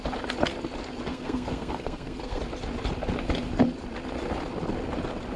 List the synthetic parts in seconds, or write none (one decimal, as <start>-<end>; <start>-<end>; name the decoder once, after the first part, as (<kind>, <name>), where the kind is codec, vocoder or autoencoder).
1.1-2.4 (codec, SNAC)